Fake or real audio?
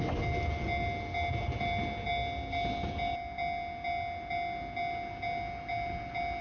real